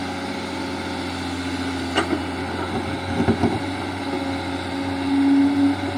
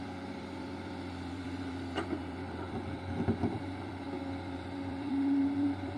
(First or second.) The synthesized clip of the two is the second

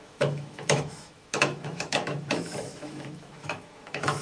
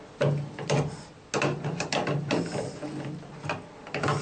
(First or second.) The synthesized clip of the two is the first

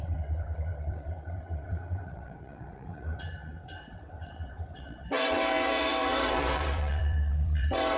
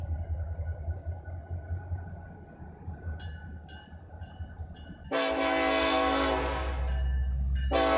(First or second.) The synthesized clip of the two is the first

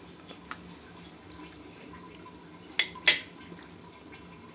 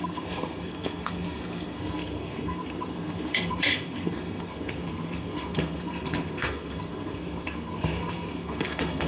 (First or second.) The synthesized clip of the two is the second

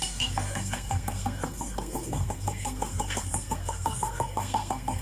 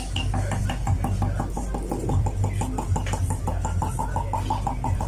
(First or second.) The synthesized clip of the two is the first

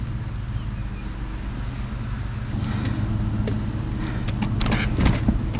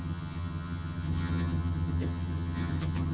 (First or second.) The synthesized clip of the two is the second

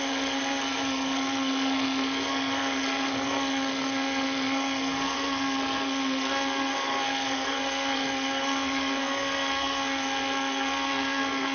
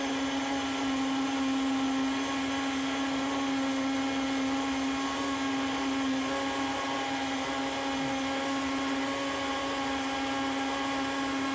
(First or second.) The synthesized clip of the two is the first